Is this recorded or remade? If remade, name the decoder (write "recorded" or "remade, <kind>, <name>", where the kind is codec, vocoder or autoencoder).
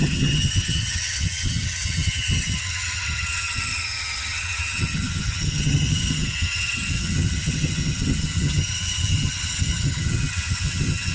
remade, vocoder, HiFi-GAN